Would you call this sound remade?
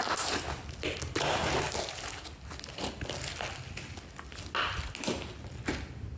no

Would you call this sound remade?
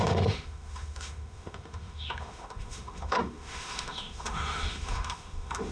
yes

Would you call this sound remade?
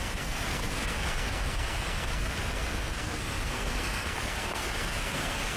yes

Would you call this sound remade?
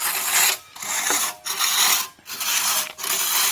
no